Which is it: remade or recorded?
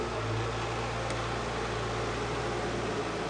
recorded